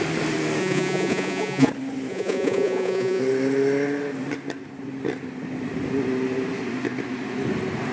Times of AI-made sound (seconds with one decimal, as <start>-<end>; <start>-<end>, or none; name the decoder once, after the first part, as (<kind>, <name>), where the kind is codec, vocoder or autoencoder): 0.6-1.7 (vocoder, Vocos); 2.1-3.2